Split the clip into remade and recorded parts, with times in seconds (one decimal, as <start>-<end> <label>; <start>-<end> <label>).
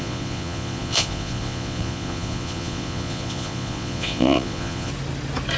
0.0-4.9 remade; 4.9-5.6 recorded